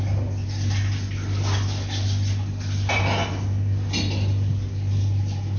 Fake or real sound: real